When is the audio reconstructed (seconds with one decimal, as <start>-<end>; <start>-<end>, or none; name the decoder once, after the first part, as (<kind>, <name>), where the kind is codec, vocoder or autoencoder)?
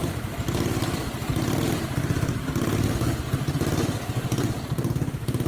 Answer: none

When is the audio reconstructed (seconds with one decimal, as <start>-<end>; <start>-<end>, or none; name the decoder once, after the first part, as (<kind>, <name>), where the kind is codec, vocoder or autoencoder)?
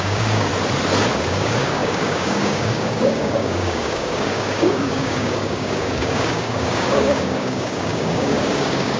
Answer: 0.0-0.5 (codec, DAC); 1.2-9.0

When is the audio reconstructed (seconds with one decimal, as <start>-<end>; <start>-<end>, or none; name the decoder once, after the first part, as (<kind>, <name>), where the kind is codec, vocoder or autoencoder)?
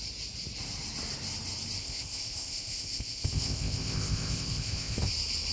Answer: 1.8-5.1 (codec, ZipCodec)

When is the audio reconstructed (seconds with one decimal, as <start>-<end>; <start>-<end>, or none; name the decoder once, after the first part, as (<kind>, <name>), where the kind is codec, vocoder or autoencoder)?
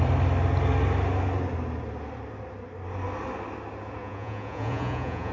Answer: 4.0-5.3 (vocoder, Vocos)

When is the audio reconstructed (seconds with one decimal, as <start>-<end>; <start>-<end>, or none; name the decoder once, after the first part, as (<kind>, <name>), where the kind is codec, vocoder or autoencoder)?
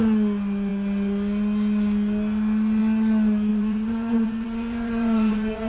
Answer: 3.5-5.7 (vocoder, Vocos)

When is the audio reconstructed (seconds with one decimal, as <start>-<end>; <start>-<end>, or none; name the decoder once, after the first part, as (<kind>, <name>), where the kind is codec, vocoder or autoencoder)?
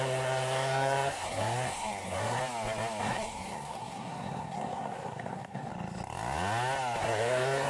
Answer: 0.0-2.4 (codec, SNAC); 3.0-5.7; 7.0-7.7